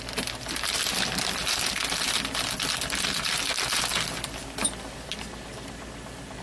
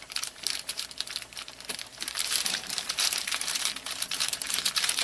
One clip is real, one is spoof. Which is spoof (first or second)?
second